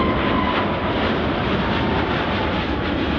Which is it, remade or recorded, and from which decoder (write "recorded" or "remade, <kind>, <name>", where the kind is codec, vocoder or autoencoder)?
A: recorded